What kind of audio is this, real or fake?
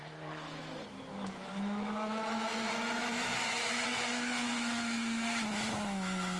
fake